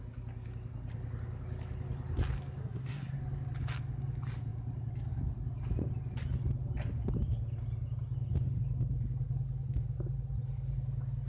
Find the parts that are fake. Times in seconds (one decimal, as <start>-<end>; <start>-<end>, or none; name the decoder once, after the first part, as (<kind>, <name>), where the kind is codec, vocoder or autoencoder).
2.6-3.2 (codec, SNAC)